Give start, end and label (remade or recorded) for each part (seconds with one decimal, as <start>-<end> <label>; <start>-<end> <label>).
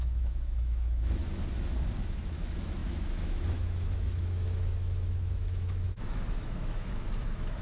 0.0-1.2 remade; 1.2-2.0 recorded; 2.0-7.6 remade